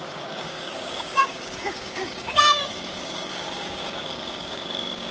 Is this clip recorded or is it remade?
remade